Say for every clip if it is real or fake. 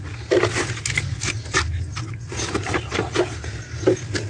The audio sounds real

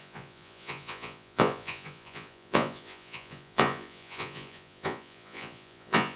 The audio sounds fake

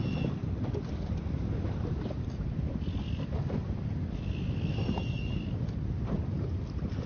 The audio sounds real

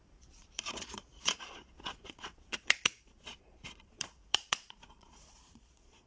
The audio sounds fake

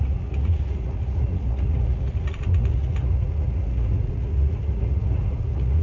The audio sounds fake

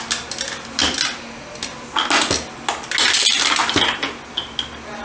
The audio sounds real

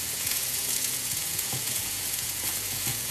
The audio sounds fake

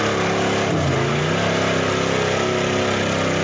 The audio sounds real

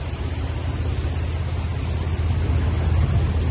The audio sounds real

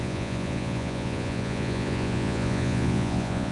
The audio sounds fake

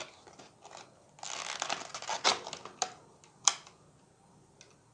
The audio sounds real